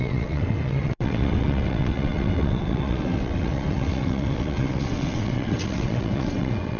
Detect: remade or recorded remade